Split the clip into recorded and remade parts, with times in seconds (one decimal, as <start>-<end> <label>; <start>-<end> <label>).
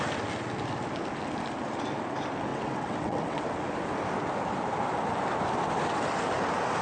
0.0-2.5 recorded; 2.5-3.5 remade; 3.5-6.8 recorded